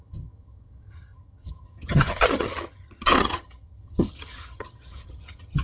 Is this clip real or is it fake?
fake